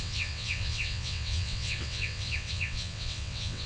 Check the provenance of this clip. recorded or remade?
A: remade